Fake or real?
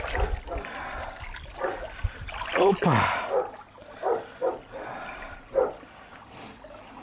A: real